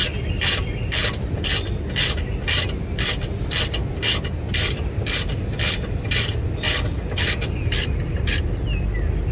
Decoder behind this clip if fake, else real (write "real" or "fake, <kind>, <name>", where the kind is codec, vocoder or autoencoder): real